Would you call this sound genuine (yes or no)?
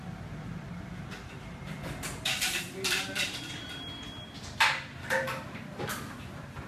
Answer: no